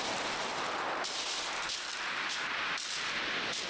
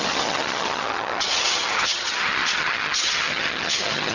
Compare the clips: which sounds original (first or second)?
first